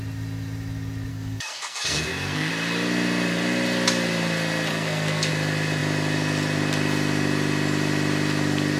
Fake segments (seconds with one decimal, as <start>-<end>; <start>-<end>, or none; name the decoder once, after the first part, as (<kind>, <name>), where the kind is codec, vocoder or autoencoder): 1.1-2.5 (codec, SNAC); 4.7-5.3